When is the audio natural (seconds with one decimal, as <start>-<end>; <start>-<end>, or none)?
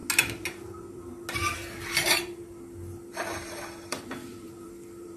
0.0-3.1